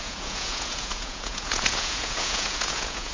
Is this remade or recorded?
remade